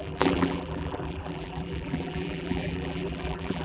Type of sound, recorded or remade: remade